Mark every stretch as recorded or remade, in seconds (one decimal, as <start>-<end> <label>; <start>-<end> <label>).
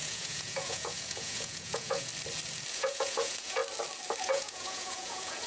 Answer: 0.0-2.1 remade; 2.1-2.7 recorded; 2.7-3.6 remade; 3.6-4.2 recorded; 4.2-5.5 remade